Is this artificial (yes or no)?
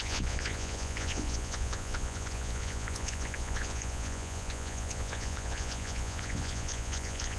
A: yes